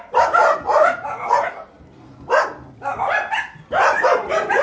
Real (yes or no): yes